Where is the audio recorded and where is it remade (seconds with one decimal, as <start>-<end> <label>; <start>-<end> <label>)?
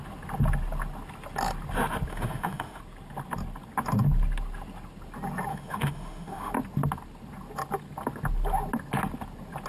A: 0.0-2.1 recorded; 2.1-2.8 remade; 2.8-5.5 recorded; 5.5-6.5 remade; 6.5-9.7 recorded